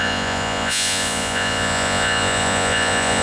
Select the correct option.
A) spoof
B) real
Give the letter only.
A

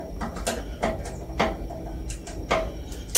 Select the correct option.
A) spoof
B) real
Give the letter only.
B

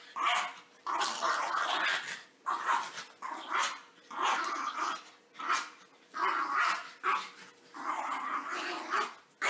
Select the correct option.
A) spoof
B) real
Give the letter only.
B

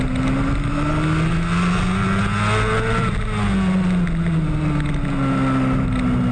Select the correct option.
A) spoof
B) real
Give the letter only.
B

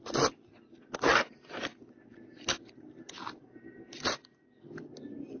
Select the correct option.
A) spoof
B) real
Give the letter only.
B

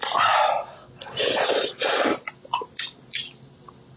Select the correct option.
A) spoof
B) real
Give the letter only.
B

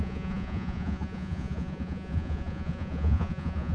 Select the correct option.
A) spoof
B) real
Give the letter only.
A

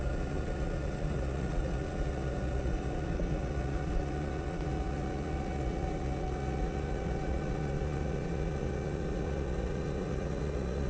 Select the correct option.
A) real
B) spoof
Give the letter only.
B